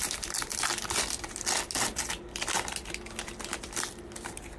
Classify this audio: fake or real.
real